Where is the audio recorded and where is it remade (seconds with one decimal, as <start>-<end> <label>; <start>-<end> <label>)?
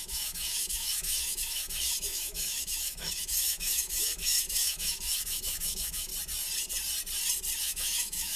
0.0-6.1 remade; 6.1-7.6 recorded; 7.6-8.4 remade